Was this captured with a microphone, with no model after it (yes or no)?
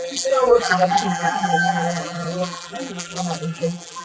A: no